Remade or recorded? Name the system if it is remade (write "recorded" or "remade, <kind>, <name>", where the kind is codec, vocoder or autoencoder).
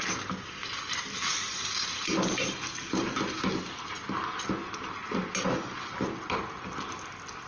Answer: recorded